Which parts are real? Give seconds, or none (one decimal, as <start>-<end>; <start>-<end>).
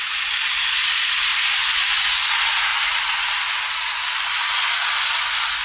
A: 0.0-2.7; 4.0-5.6